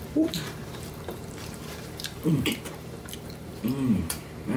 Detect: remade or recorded remade